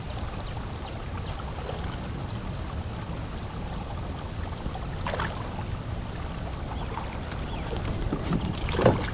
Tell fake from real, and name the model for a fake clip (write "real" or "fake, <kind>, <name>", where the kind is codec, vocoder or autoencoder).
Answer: real